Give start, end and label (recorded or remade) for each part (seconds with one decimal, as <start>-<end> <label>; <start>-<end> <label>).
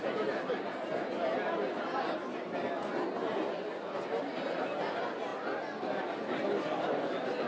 0.0-7.5 recorded